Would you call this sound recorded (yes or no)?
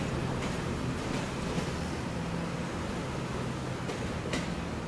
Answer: yes